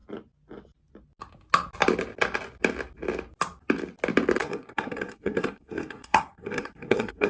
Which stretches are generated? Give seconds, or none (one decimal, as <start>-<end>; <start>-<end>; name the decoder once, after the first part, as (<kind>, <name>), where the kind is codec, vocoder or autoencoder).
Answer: 4.4-7.3 (codec, SNAC)